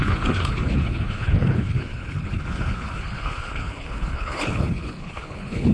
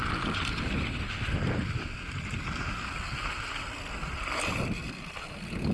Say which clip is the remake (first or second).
first